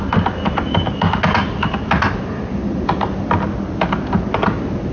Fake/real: real